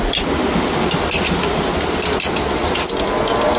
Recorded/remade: recorded